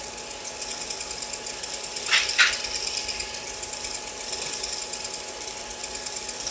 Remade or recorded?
recorded